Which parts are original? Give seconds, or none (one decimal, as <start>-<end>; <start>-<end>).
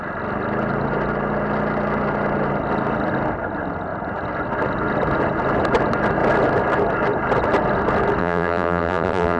0.0-8.2